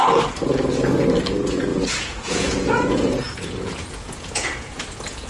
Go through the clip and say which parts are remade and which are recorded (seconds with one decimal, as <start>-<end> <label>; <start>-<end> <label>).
0.0-1.7 recorded; 1.7-5.3 remade